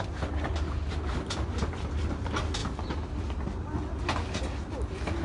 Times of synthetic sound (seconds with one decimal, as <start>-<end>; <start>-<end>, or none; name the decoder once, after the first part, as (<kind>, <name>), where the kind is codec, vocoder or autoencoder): none